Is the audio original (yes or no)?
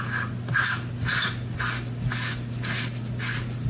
yes